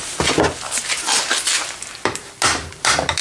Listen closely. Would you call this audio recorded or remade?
recorded